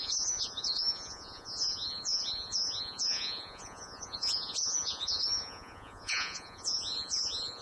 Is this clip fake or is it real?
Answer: fake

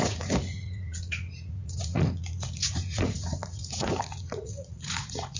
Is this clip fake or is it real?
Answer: fake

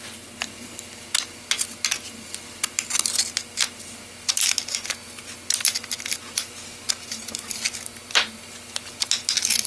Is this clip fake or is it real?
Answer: real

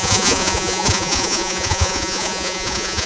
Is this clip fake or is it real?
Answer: fake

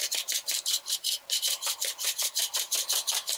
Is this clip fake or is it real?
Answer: real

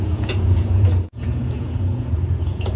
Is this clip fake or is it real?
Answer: fake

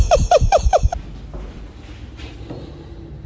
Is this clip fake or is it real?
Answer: real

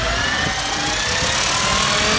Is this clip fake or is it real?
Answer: real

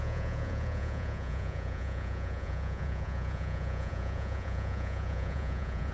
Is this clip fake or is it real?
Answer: fake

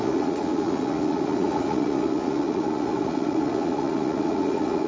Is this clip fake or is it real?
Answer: fake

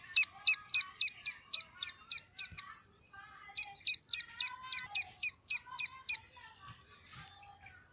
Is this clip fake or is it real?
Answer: real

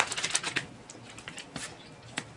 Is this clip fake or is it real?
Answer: real